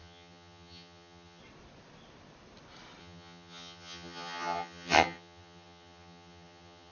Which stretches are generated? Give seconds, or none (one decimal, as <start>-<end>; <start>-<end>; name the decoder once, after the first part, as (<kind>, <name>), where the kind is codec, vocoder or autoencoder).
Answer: 0.0-1.4 (vocoder, HiFi-GAN); 3.0-6.9

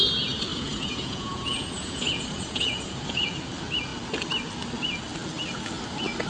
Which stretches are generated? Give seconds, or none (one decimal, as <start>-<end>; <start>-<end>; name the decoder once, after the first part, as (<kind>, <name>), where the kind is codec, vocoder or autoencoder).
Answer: 0.5-3.3 (vocoder, Vocos)

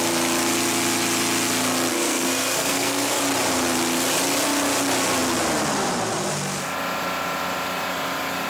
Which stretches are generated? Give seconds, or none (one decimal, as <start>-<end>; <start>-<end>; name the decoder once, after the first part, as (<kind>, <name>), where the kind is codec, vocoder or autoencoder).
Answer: 1.9-3.2 (codec, SNAC)